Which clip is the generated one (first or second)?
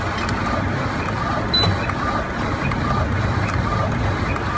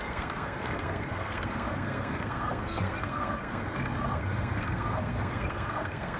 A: second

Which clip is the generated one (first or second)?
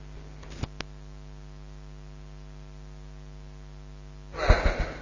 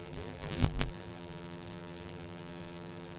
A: second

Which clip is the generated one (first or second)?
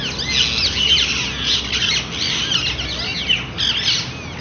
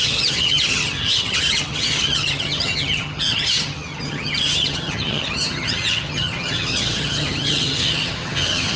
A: second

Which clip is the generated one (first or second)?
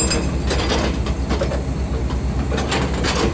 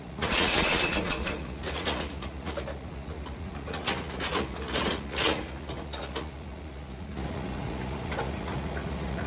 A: second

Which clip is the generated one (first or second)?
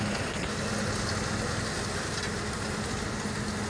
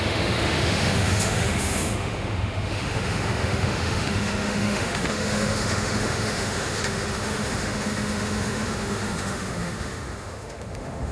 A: second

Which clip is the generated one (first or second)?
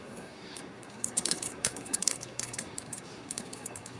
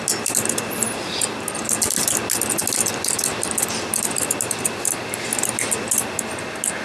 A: first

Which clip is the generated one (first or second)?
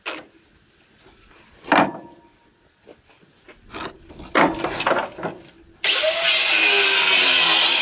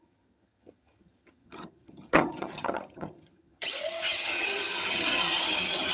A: second